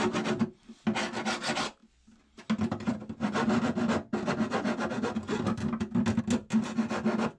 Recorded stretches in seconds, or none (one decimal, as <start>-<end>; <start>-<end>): 0.0-7.4